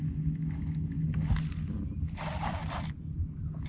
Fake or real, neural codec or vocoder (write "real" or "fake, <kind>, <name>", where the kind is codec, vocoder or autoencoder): real